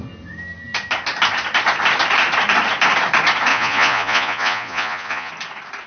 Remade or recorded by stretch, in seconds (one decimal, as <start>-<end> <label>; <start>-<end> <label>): 0.0-3.5 recorded; 3.5-5.3 remade; 5.3-5.9 recorded